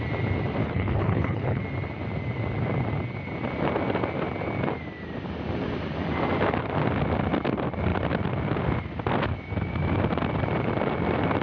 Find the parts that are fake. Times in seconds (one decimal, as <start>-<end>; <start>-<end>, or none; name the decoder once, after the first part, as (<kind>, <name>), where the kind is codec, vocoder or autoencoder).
0.6-1.6 (codec, HILCodec)